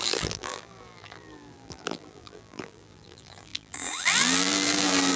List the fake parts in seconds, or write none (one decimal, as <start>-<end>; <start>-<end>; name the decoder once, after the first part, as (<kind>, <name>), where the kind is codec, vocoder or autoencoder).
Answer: 0.0-5.2 (vocoder, BigVGAN v2)